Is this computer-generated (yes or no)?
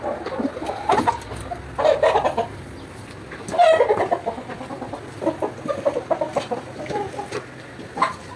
no